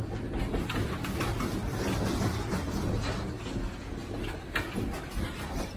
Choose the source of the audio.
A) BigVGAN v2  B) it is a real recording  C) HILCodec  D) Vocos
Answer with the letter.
B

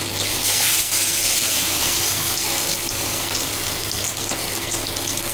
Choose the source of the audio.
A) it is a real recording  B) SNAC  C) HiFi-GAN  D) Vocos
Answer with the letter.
B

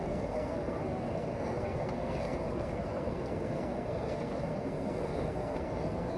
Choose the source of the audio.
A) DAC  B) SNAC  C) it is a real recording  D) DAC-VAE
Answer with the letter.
B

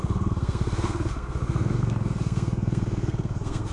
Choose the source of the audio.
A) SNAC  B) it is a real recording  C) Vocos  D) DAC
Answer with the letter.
A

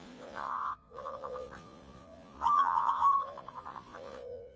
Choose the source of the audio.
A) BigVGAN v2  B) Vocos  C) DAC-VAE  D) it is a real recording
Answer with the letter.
B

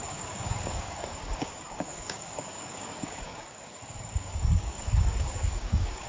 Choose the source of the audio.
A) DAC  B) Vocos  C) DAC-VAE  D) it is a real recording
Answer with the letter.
A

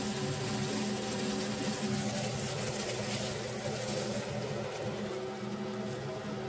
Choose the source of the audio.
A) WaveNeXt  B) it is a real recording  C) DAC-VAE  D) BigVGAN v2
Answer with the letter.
B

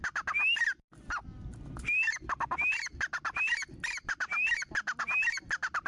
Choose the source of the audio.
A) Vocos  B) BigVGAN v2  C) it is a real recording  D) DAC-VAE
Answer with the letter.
C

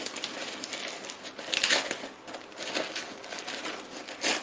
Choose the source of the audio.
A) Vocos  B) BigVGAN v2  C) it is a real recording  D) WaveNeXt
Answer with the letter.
C